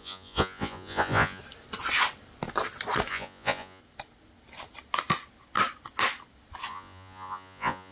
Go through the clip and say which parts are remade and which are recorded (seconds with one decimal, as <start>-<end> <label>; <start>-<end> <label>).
0.0-1.4 remade; 1.4-3.1 recorded; 3.1-3.8 remade; 3.8-6.7 recorded; 6.7-7.9 remade